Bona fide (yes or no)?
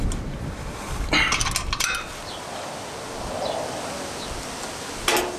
yes